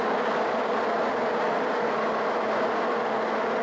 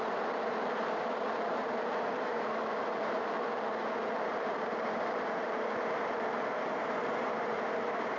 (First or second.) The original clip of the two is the first